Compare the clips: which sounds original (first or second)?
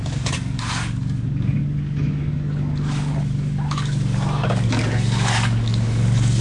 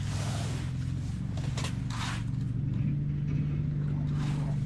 second